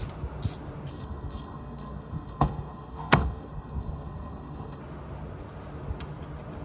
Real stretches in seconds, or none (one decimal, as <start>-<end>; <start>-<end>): 0.0-0.9; 4.8-6.6